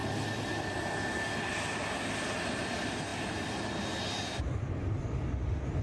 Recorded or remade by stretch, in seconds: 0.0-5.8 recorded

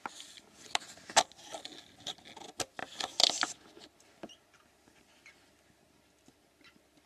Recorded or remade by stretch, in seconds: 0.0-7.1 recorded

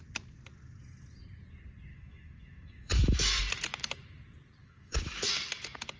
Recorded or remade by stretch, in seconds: 0.0-1.9 recorded; 1.9-3.4 remade; 3.4-4.6 recorded; 4.6-5.3 remade; 5.3-6.0 recorded

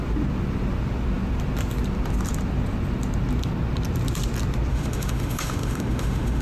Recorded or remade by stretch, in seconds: 0.0-4.7 recorded; 4.7-6.4 remade

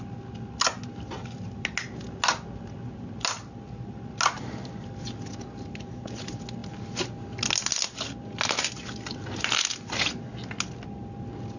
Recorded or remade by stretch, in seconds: 0.0-11.6 recorded

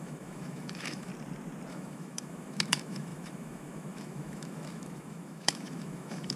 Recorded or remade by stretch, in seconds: 0.0-1.1 remade; 1.1-1.7 recorded; 1.7-6.4 remade

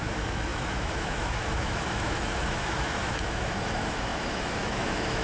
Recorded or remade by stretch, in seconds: 0.0-5.2 remade

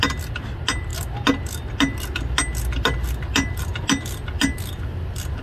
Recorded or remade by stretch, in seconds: 0.0-5.4 recorded